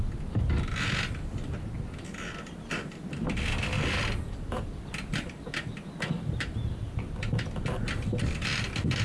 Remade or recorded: recorded